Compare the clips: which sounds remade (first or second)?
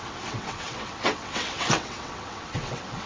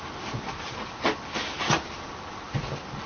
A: first